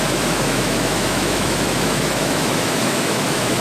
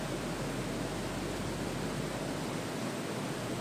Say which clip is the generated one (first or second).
first